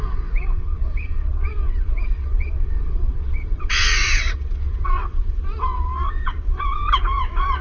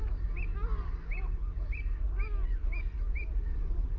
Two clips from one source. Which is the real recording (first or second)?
second